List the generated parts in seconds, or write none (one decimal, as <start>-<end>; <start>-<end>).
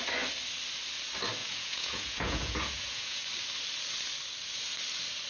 1.4-3.2